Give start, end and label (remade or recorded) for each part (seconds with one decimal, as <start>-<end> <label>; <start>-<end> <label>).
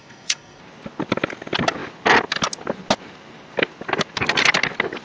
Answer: 0.0-0.6 remade; 0.6-5.0 recorded